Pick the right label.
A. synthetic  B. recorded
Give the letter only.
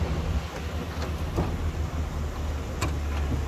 B